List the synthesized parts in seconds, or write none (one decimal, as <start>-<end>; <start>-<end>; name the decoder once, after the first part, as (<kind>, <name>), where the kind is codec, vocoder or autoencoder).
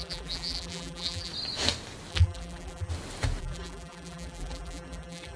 0.0-1.3 (vocoder, BigVGAN v2); 2.1-2.9; 3.4-5.4